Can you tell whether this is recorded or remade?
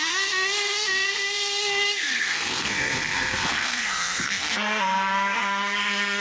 remade